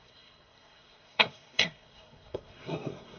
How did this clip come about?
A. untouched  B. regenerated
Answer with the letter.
B